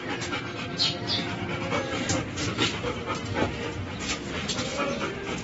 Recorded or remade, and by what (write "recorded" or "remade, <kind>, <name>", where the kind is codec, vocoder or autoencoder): recorded